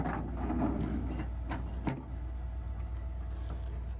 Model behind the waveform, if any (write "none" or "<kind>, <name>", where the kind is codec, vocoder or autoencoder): none